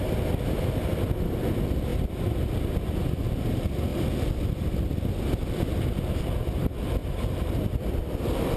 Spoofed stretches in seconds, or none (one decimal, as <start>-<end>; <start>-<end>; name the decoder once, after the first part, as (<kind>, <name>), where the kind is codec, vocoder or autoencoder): 1.9-2.5 (vocoder, BigVGAN v2); 7.0-7.8